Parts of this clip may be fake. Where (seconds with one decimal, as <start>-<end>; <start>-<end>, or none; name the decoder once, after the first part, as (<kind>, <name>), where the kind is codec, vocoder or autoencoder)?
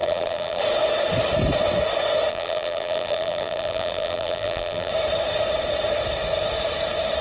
0.0-0.6 (vocoder, BigVGAN v2); 2.3-4.9